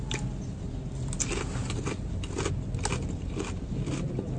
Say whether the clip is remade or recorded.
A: recorded